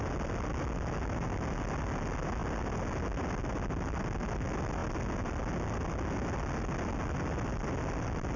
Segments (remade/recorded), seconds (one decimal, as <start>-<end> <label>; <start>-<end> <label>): 0.0-8.4 recorded